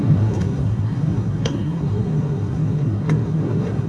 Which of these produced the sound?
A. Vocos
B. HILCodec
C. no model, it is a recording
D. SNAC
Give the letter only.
D